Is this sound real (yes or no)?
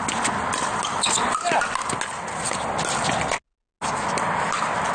yes